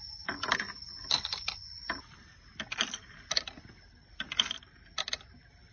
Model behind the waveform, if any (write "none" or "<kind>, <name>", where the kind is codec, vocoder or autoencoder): none